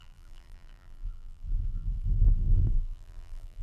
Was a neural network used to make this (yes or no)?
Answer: yes